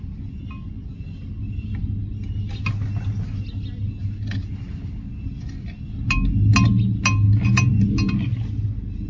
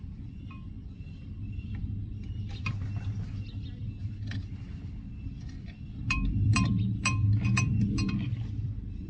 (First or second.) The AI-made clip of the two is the second